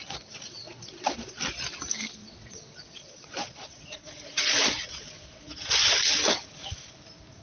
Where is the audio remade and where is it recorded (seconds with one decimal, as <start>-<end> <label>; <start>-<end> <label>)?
0.0-0.5 recorded; 0.5-1.4 remade; 1.4-2.2 recorded; 2.2-5.9 remade; 5.9-7.4 recorded